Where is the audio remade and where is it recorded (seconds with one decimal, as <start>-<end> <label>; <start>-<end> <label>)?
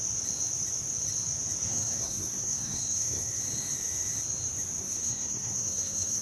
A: 0.0-1.7 recorded; 1.7-3.4 remade; 3.4-4.8 recorded; 4.8-6.2 remade